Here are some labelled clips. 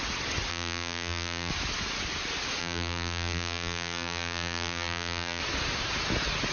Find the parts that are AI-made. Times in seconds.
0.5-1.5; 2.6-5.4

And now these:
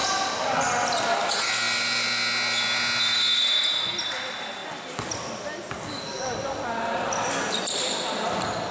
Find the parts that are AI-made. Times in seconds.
none

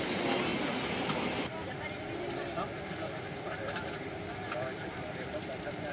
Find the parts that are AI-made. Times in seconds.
0.0-0.5; 1.4-5.9

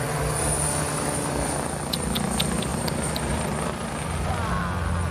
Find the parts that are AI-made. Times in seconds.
2.7-4.3